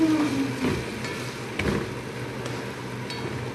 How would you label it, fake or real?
real